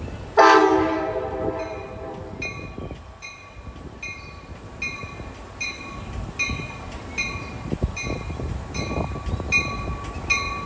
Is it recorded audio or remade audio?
recorded